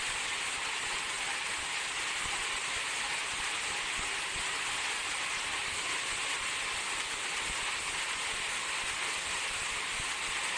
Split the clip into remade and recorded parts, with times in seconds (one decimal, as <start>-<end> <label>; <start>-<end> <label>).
0.0-10.6 recorded